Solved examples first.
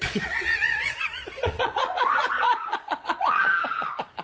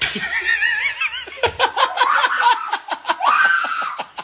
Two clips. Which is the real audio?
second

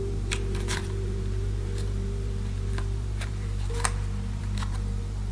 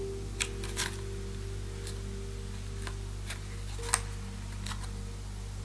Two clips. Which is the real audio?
second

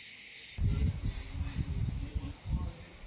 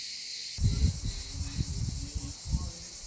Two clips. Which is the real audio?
second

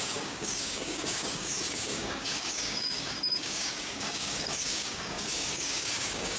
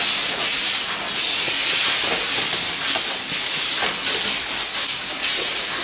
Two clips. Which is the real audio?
second